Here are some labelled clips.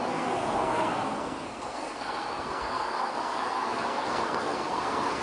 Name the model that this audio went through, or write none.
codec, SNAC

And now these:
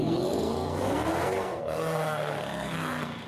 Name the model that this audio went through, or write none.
codec, SNAC